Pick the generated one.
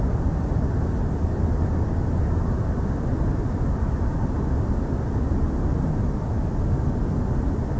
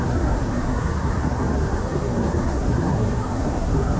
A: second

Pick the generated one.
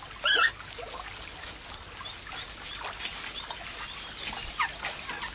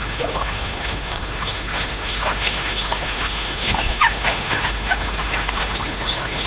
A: second